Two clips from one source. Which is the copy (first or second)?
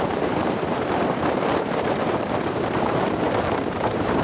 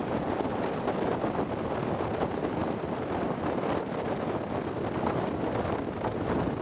first